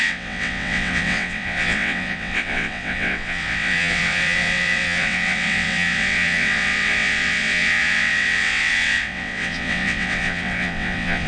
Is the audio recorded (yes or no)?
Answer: no